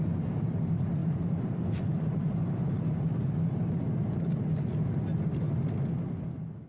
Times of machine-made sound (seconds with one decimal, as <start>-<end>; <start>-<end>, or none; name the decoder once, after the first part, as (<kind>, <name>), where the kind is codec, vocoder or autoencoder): 1.0-5.0 (vocoder, BigVGAN v2)